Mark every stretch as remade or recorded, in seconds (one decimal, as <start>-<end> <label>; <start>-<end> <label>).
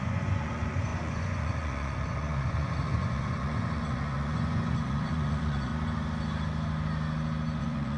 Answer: 0.0-5.7 remade; 5.7-7.6 recorded; 7.6-8.0 remade